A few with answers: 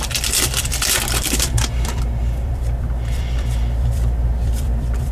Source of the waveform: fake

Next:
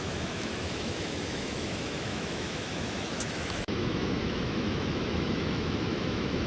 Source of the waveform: fake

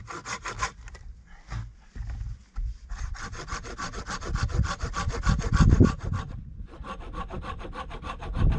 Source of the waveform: real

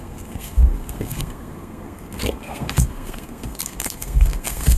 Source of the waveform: fake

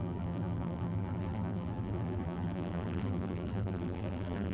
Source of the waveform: fake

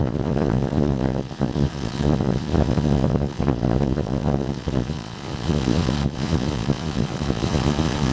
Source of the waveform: fake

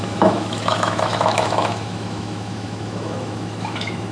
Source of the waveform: fake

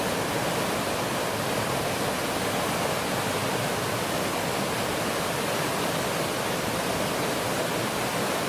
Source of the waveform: real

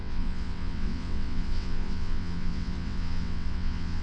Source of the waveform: fake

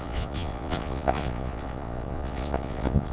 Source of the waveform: fake